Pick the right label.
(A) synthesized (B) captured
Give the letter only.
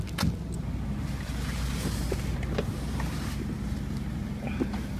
B